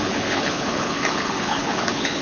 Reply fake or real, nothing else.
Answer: fake